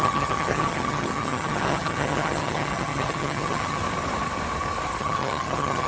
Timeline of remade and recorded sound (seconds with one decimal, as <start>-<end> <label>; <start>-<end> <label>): 0.0-3.8 remade; 3.8-5.0 recorded; 5.0-5.9 remade